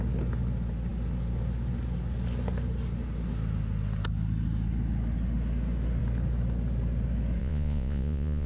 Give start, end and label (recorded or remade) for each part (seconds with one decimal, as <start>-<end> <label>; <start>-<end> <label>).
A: 0.0-7.4 recorded; 7.4-8.5 remade